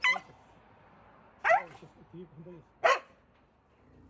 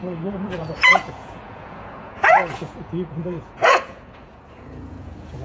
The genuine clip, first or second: first